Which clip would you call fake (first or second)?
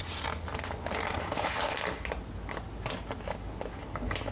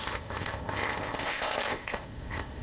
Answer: second